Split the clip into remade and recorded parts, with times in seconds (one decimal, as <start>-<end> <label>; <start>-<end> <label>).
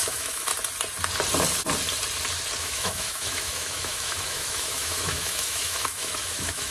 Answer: 0.0-0.5 remade; 0.5-2.6 recorded; 2.6-6.7 remade